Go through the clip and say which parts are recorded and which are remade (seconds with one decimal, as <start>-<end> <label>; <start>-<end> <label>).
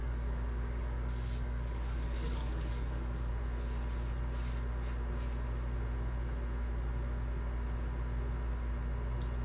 0.0-3.3 remade; 3.3-9.4 recorded